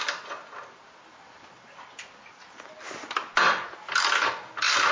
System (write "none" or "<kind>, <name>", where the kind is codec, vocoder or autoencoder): none